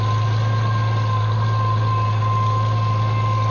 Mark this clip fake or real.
real